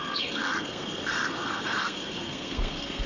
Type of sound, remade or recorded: remade